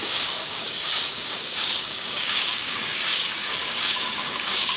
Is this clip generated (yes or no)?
yes